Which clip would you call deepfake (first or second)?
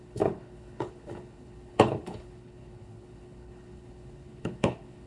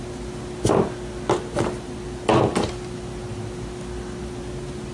first